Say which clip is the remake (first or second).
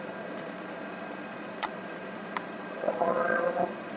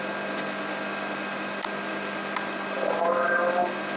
first